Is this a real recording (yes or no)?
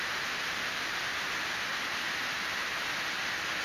yes